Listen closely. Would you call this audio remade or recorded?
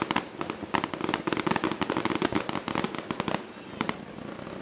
recorded